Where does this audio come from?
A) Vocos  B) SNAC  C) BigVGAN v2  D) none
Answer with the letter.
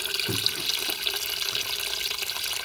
C